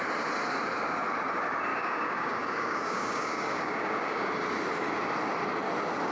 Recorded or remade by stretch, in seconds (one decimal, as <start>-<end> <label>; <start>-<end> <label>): 0.0-1.7 recorded; 1.7-4.3 remade; 4.3-6.1 recorded